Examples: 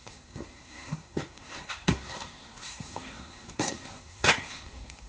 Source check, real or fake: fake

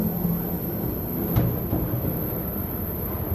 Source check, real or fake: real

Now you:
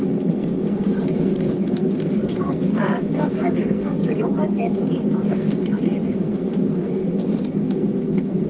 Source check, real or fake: fake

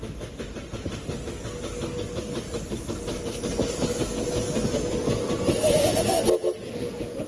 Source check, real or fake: real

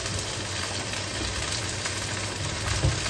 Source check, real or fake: real